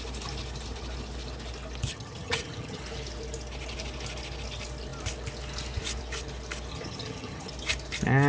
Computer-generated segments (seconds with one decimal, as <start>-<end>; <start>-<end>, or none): 1.9-2.8; 6.7-7.5